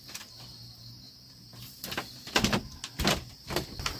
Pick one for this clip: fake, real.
real